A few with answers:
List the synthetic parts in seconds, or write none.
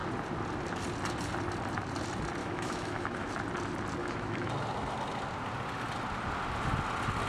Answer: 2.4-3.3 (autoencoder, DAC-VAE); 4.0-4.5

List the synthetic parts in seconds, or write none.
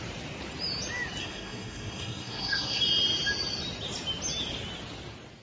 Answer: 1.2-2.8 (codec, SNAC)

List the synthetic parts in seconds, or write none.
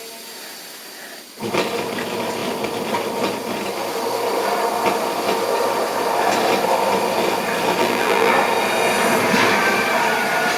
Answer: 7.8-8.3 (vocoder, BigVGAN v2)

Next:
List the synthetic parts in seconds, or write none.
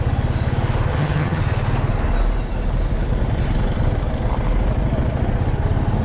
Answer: 0.9-1.4 (vocoder, HiFi-GAN)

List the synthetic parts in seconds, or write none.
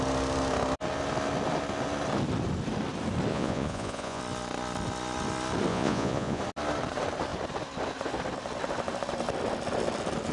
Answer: 3.3-4.2 (vocoder, Vocos); 5.7-6.4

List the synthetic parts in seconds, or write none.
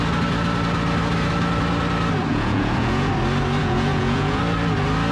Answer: 2.3-3.1 (vocoder, Vocos); 3.6-4.4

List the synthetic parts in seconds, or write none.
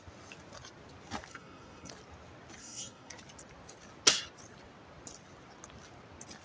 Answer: 1.3-1.9 (codec, SNAC); 2.6-3.1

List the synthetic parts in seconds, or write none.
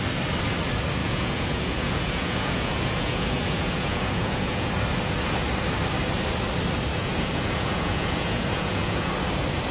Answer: 1.0-4.7 (vocoder, Vocos); 6.9-9.1